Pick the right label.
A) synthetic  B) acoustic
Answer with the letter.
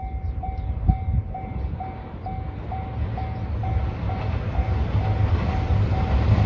B